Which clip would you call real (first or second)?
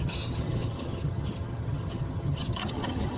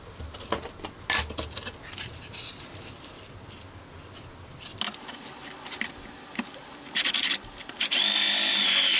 second